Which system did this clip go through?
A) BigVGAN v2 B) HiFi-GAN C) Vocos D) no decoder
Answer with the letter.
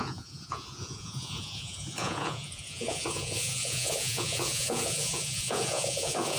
C